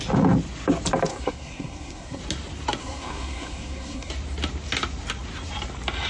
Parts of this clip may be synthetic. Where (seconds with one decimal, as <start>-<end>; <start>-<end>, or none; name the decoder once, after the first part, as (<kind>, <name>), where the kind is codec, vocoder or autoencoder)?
1.1-2.2 (codec, SNAC); 2.8-4.1